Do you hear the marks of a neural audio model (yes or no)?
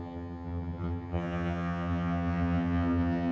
yes